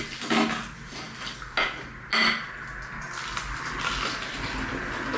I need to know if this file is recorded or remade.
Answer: recorded